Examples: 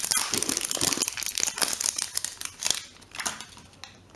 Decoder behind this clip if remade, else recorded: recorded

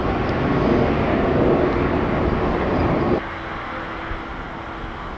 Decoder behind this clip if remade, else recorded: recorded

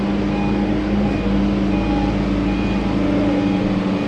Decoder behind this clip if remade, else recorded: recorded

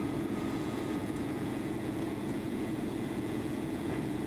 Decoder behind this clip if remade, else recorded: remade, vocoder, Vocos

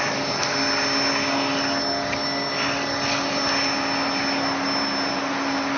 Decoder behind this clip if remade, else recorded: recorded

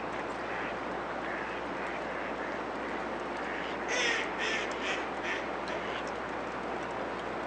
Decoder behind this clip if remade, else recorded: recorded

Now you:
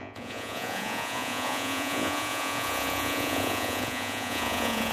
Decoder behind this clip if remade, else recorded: remade, vocoder, Vocos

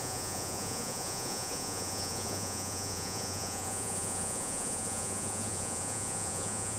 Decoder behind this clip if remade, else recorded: remade, vocoder, Vocos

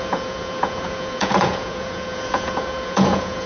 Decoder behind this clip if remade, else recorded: remade, vocoder, Vocos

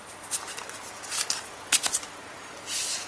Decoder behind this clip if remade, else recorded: recorded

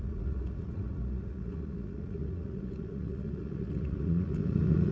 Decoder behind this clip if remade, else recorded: remade, vocoder, Vocos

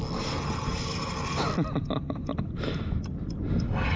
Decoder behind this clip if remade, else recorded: recorded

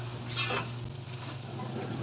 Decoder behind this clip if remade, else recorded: recorded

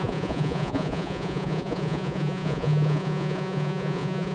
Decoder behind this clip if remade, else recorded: remade, vocoder, Vocos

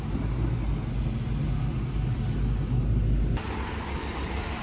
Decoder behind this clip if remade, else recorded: recorded